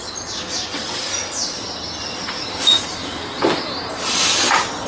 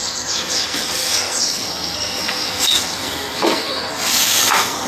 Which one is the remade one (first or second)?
second